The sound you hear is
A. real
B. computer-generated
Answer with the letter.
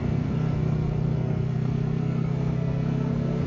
B